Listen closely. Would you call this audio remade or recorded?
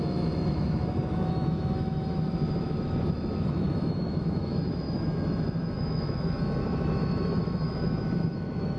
remade